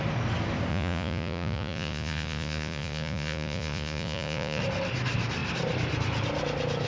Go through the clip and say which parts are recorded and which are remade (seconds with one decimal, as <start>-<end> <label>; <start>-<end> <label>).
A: 0.0-0.7 recorded; 0.7-4.6 remade; 4.6-6.9 recorded

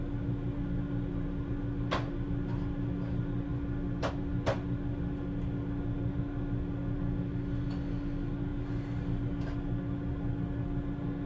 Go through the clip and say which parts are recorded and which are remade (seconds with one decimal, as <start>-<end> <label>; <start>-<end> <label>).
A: 0.0-11.3 recorded

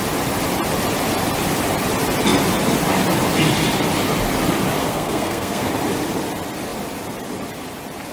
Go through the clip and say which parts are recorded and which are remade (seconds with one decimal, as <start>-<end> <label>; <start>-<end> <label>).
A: 0.0-4.8 recorded; 4.8-5.7 remade; 5.7-8.1 recorded